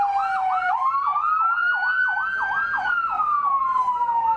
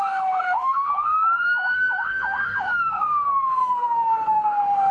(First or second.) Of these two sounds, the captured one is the first